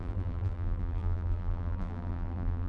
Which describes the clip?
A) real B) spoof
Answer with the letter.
B